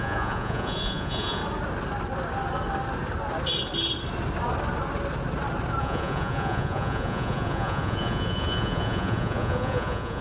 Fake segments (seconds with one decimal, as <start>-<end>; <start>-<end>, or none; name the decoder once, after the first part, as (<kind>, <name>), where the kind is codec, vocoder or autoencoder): 0.0-1.4 (vocoder, Vocos); 5.8-10.2